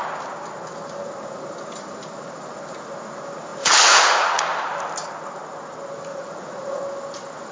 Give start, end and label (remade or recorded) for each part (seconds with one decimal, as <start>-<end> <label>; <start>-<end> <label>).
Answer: 0.0-3.5 recorded; 3.5-4.8 remade; 4.8-6.1 recorded; 6.1-6.8 remade; 6.8-7.5 recorded